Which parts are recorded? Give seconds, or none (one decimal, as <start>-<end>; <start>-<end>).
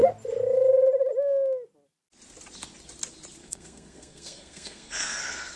0.0-3.4